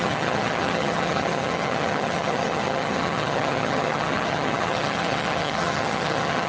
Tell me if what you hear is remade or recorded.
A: remade